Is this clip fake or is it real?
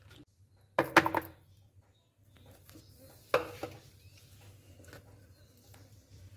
real